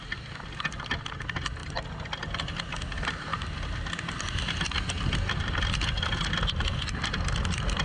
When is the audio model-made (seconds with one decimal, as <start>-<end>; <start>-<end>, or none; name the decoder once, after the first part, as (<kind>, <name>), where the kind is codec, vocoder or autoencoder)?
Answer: 1.6-2.3 (vocoder, BigVGAN v2); 3.3-4.1